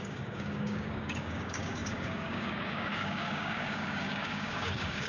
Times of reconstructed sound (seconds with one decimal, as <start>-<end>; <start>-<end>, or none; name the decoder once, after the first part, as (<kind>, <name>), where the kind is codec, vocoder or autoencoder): 0.0-5.1 (codec, DAC)